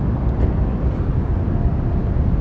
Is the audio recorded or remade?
recorded